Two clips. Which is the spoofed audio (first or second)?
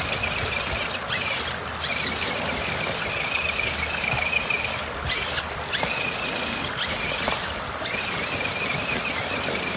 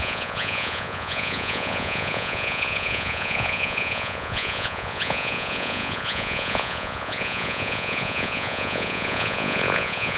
second